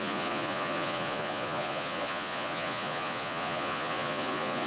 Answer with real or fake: fake